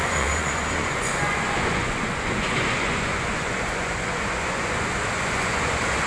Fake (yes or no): yes